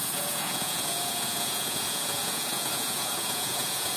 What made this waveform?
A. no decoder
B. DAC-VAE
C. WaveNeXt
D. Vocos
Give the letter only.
D